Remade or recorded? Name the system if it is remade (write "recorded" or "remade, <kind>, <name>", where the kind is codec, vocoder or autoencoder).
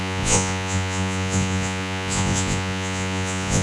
remade, vocoder, Vocos